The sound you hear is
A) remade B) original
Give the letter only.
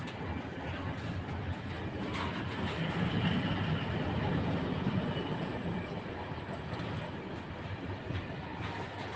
B